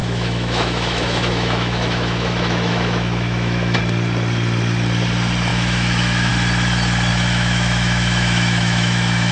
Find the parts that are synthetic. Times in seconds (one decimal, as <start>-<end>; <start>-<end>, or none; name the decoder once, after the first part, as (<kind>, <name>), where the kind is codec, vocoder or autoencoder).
0.0-3.8 (autoencoder, DAC-VAE); 5.5-6.3; 7.1-9.3